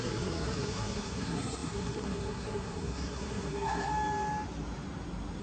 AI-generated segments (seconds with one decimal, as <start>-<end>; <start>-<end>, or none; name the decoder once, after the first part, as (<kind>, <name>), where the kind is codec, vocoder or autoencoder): 0.0-3.9 (codec, SNAC)